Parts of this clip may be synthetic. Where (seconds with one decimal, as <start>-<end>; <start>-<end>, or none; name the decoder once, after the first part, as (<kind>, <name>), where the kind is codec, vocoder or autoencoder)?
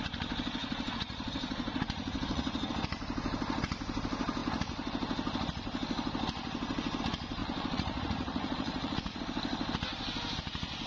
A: 0.6-2.7 (vocoder, Vocos); 7.4-9.2